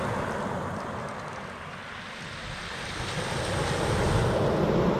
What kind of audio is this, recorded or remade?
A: recorded